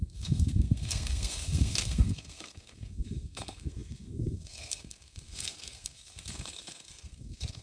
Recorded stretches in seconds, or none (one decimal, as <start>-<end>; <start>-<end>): none